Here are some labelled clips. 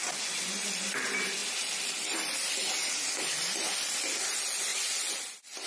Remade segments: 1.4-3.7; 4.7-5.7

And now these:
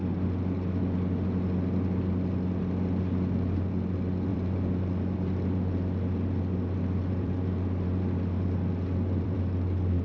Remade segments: 4.3-9.4